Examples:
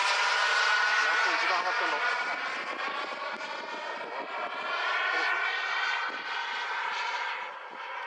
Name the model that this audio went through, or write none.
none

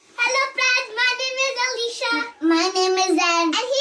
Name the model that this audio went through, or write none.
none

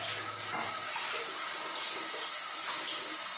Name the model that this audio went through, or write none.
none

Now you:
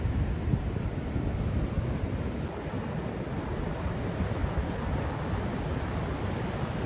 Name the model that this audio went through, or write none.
none